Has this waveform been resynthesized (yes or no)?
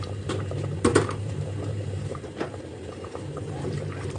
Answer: yes